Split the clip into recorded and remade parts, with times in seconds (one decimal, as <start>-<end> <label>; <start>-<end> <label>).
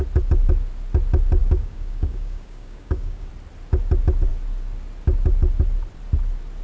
0.0-1.4 recorded; 1.4-3.3 remade; 3.3-6.6 recorded